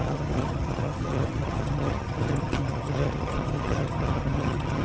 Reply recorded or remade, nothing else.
remade